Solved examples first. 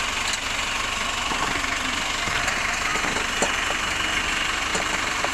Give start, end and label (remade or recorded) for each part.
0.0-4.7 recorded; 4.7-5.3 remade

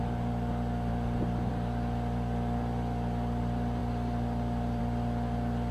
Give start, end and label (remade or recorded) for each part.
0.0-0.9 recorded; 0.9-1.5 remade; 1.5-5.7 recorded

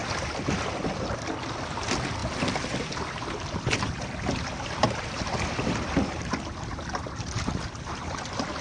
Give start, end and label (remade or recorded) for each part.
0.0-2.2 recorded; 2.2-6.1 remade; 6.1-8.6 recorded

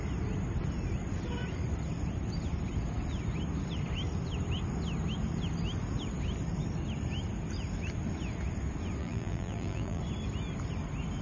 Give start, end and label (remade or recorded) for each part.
0.0-9.0 recorded; 9.0-10.0 remade; 10.0-11.2 recorded

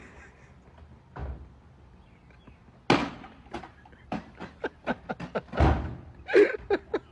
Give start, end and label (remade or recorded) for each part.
0.0-3.0 recorded; 3.0-5.1 remade; 5.1-7.1 recorded

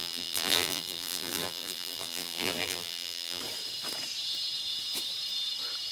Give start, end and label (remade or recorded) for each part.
0.0-3.4 remade; 3.4-5.9 recorded